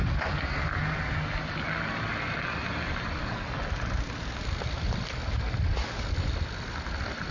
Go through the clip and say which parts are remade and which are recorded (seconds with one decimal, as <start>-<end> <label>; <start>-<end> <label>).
0.0-7.3 recorded